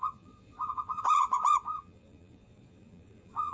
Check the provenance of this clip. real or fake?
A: fake